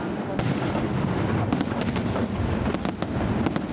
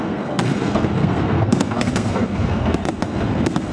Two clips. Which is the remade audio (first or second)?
second